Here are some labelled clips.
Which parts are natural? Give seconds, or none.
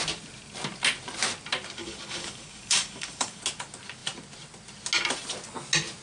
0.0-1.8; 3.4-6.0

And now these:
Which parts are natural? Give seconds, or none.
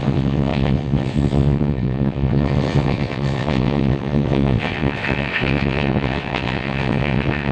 none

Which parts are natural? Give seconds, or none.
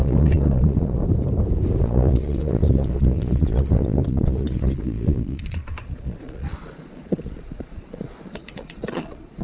1.0-1.8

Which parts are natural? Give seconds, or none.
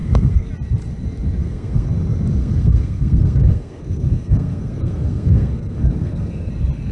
0.5-1.4; 1.9-2.4; 6.5-6.9